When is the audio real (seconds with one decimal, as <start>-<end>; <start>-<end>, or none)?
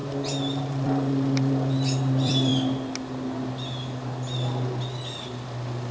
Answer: 0.0-0.6; 2.5-5.9